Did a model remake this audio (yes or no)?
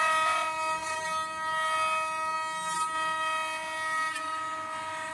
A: no